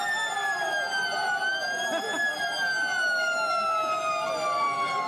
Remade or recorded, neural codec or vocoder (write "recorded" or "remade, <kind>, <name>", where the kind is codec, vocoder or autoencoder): recorded